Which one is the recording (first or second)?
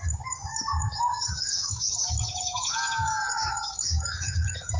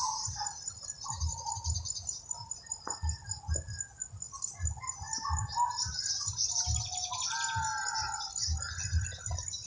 second